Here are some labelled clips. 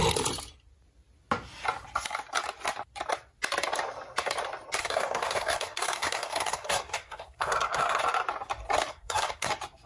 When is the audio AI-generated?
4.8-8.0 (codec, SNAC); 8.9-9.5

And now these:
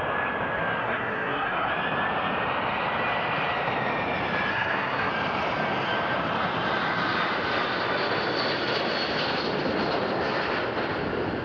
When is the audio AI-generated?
0.8-1.7 (codec, SNAC); 4.5-5.1